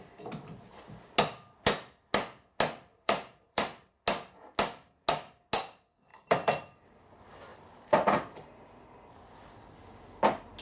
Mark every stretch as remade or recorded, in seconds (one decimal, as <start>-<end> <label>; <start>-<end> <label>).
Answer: 0.0-2.9 recorded; 2.9-3.9 remade; 3.9-6.1 recorded; 6.1-7.1 remade; 7.1-7.5 recorded; 7.5-9.2 remade; 9.2-10.6 recorded